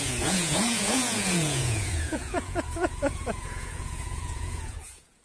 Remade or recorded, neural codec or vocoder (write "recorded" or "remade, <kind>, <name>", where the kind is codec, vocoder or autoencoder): remade, vocoder, Vocos